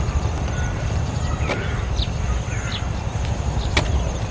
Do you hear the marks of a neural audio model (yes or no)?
no